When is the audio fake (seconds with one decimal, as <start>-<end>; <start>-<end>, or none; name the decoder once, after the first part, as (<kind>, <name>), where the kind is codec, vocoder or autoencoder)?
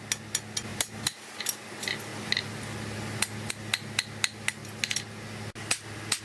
0.7-1.4 (vocoder, BigVGAN v2)